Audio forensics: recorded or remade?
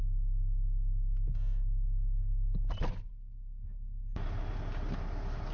recorded